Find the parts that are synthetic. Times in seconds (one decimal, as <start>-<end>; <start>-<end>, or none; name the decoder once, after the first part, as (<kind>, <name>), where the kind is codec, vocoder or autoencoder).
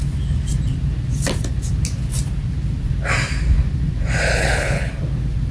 4.3-4.9 (codec, HILCodec)